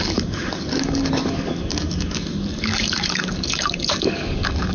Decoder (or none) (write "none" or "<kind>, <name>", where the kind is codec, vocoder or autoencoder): codec, DAC